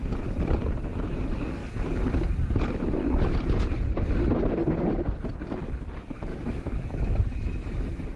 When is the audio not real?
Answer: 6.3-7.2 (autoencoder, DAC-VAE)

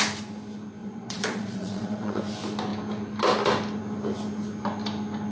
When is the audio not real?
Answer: 0.8-2.2 (vocoder, Vocos)

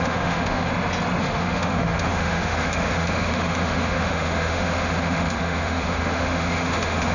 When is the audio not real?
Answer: 0.0-0.7 (autoencoder, DAC-VAE); 1.2-7.1

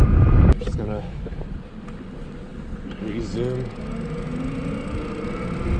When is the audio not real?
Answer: 0.7-1.4 (autoencoder, DAC-VAE)

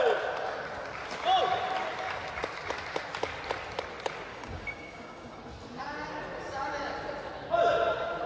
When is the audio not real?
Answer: 4.3-5.4 (codec, DAC)

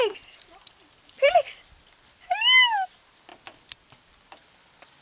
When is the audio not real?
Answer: none

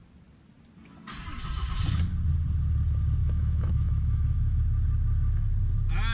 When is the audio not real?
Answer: 3.2-4.6 (autoencoder, DAC-VAE)